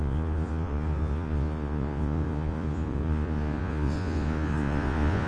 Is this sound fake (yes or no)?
yes